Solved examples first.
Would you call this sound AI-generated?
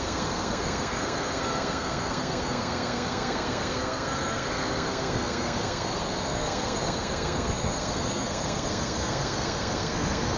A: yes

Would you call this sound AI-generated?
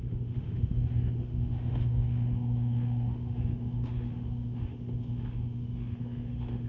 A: yes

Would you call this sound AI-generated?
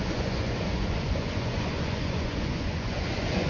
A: yes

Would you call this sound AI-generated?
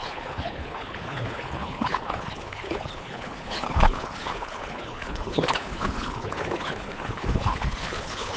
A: yes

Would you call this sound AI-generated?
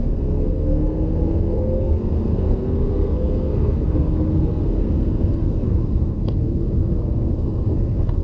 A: yes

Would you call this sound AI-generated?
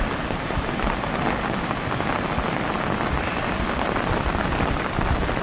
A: no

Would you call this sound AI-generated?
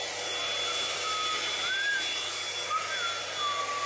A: no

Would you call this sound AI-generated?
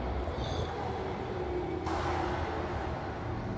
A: no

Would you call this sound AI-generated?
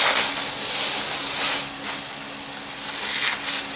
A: no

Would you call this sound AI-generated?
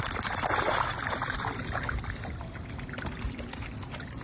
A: no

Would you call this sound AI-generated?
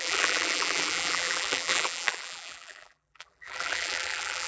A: yes